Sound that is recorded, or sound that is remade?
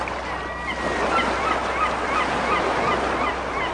recorded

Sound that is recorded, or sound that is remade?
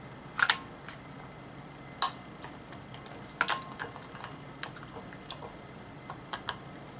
recorded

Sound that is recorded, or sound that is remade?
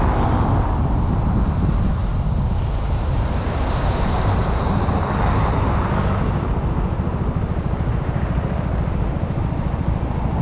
recorded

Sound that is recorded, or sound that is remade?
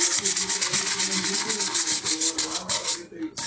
recorded